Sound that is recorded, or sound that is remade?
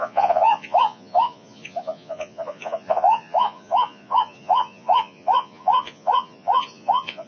remade